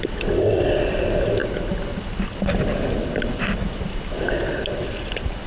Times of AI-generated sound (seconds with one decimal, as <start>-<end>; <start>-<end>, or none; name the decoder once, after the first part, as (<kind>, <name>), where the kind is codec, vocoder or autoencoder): none